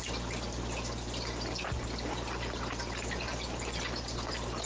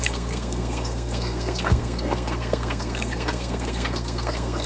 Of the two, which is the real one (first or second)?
first